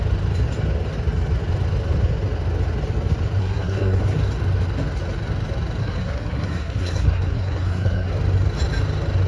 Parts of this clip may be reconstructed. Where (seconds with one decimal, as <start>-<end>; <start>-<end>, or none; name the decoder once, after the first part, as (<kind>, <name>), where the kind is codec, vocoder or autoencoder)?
3.4-4.0 (codec, SNAC); 5.8-8.1